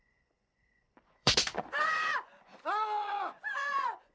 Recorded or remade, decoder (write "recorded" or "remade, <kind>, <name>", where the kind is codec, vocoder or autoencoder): remade, vocoder, Vocos